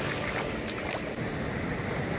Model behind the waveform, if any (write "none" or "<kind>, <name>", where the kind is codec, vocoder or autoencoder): none